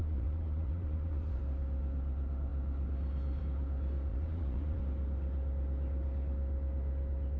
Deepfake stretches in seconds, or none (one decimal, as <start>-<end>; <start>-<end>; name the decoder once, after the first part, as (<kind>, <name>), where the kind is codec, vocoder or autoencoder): 0.0-1.4 (vocoder, Vocos); 4.1-4.8